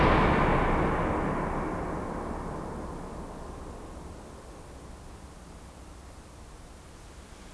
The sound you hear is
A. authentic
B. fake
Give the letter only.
A